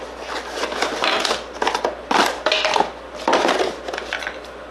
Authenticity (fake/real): real